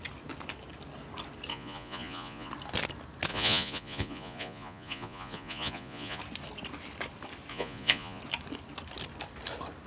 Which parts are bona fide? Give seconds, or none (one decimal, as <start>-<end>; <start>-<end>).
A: 0.0-1.5; 2.5-3.3; 6.2-7.5; 8.2-9.9